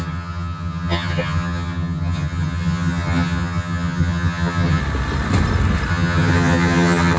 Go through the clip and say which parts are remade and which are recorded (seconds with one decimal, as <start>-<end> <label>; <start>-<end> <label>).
0.0-4.8 remade; 4.8-5.9 recorded; 5.9-7.2 remade